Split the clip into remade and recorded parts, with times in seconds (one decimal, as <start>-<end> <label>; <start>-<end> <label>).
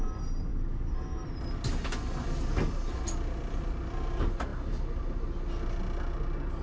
0.0-6.6 recorded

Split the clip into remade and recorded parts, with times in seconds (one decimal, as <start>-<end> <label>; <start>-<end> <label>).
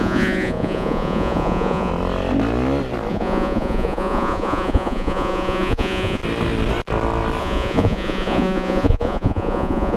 0.0-1.9 remade; 1.9-3.1 recorded; 3.1-6.2 remade; 6.2-7.4 recorded; 7.4-10.0 remade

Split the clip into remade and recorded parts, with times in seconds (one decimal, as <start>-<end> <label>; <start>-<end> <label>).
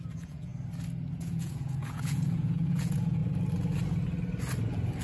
0.0-0.5 remade; 0.5-1.2 recorded; 1.2-3.2 remade; 3.2-5.0 recorded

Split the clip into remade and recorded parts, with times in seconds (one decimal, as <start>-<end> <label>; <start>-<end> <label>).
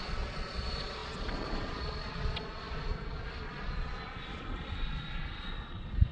0.0-6.1 remade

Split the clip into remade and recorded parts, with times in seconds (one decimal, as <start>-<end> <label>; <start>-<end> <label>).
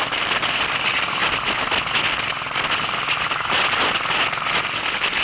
0.0-5.2 recorded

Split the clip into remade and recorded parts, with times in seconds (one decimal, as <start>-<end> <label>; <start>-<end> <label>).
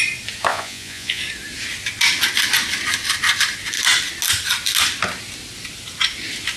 0.0-0.5 recorded; 0.5-1.2 remade; 1.2-6.6 recorded